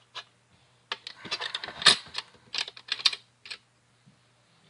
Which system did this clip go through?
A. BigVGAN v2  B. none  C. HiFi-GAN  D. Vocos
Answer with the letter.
B